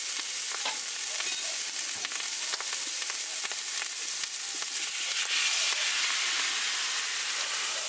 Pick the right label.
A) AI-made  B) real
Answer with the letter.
B